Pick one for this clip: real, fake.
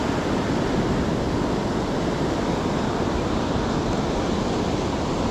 real